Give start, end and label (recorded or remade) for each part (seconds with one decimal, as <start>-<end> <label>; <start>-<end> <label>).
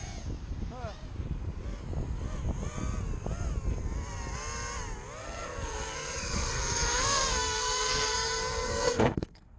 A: 0.0-5.2 recorded; 5.2-9.6 remade